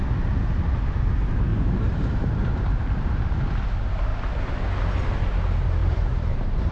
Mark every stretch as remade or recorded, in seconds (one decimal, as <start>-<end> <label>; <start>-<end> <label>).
0.0-1.5 recorded; 1.5-3.2 remade; 3.2-5.8 recorded; 5.8-6.7 remade